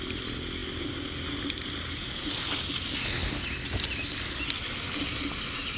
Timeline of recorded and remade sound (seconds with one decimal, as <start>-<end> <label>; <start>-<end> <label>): 0.0-5.8 recorded